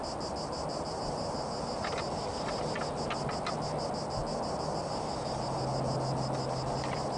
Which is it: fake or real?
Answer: real